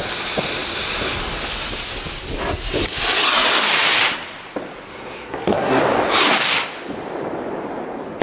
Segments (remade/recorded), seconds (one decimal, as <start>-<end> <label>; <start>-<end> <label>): 0.0-4.9 recorded; 4.9-5.8 remade; 5.8-8.2 recorded